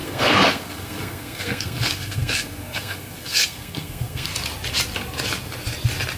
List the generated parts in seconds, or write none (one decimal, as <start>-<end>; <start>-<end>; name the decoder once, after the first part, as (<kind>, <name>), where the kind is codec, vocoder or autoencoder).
0.0-4.3 (codec, SNAC)